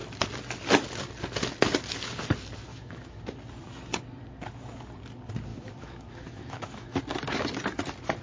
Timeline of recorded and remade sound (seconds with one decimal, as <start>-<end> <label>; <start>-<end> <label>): 0.0-2.7 recorded; 2.7-3.2 remade; 3.2-5.5 recorded; 5.5-7.0 remade; 7.0-8.2 recorded